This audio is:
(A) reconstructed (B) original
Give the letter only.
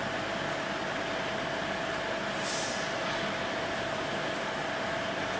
B